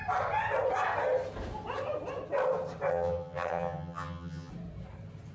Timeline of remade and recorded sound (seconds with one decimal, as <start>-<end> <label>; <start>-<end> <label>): 0.0-2.9 recorded; 2.9-4.5 remade; 4.5-5.3 recorded